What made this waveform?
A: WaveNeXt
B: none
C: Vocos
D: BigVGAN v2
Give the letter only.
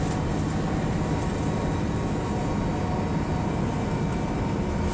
B